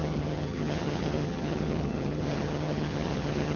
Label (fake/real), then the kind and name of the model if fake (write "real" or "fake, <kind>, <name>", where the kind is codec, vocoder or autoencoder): fake, vocoder, HiFi-GAN